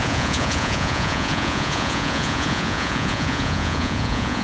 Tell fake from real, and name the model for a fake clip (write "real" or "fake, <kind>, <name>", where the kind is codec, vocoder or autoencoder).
fake, vocoder, Vocos